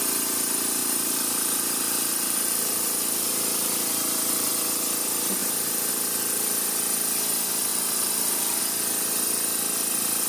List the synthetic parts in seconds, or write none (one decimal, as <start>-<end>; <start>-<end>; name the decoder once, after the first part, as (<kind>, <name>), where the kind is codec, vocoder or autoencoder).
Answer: 0.8-4.5 (vocoder, BigVGAN v2); 5.4-5.9; 7.7-8.6